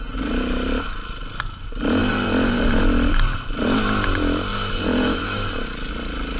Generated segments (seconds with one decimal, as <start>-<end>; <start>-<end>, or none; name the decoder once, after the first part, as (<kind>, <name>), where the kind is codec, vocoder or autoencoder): 2.0-2.8 (vocoder, BigVGAN v2); 4.5-5.9